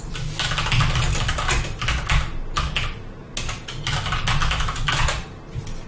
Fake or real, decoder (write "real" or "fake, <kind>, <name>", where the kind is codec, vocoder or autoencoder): real